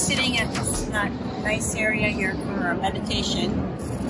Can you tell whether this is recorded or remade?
recorded